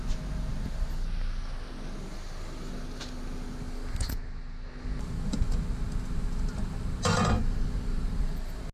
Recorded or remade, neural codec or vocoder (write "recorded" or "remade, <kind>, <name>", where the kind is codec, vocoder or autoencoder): recorded